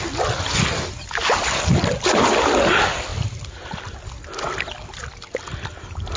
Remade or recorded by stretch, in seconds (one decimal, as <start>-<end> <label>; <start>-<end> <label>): 0.0-6.2 recorded